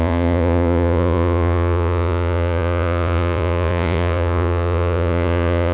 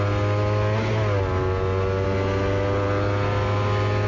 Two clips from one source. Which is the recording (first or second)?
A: second